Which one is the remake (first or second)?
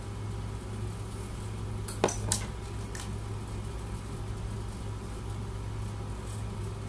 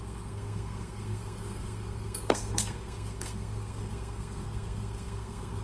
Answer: second